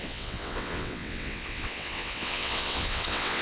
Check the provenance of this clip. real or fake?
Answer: fake